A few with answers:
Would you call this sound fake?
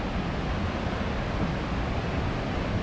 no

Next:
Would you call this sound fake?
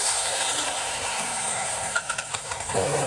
yes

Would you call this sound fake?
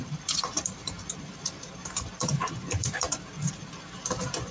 yes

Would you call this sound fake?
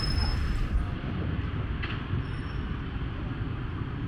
no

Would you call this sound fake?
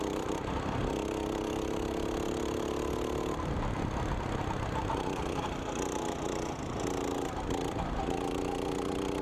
no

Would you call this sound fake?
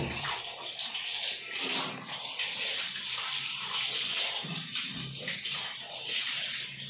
yes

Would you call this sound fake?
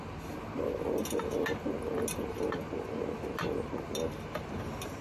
no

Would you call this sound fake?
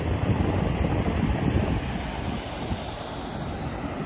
no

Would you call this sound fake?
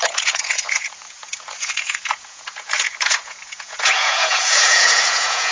yes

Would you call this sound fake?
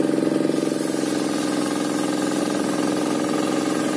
no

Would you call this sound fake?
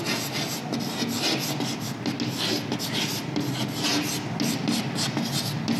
no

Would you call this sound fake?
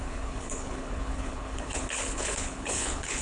yes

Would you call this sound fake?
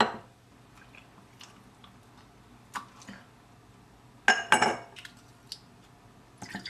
no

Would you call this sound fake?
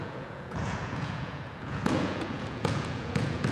yes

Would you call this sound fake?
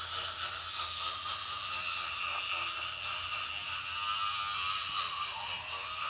no